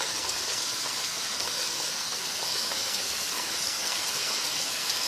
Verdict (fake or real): fake